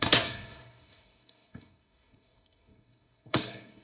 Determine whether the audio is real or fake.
fake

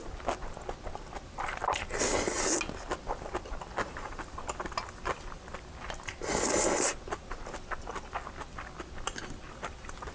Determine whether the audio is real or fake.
real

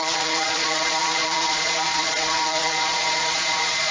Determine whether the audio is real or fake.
fake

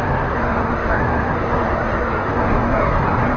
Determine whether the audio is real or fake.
fake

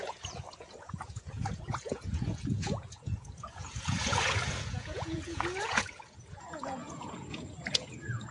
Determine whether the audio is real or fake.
fake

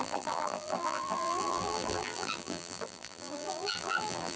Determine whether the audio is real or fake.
fake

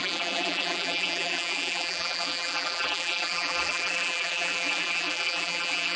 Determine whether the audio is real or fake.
fake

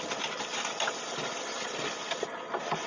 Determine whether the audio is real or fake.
real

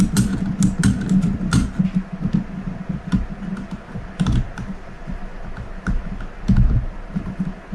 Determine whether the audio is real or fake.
real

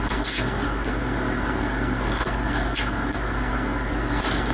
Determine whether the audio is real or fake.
fake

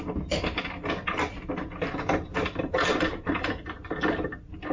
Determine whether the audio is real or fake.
real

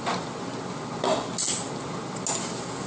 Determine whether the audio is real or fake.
real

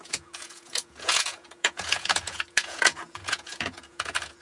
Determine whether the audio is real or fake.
fake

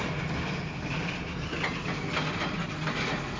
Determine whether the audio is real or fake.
real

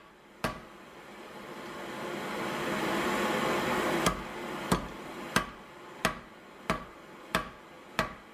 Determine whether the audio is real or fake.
real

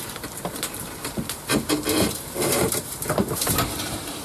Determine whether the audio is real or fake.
fake